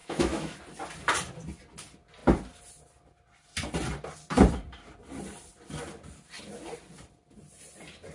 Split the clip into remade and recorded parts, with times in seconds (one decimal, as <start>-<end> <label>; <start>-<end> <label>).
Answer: 0.0-0.6 remade; 0.6-8.1 recorded